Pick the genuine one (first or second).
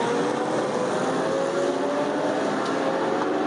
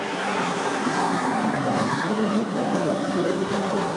first